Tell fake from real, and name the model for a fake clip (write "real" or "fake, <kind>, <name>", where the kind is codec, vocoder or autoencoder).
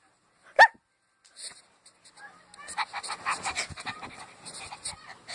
real